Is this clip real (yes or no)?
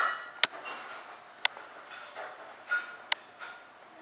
yes